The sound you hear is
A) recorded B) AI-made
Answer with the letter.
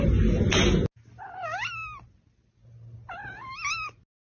A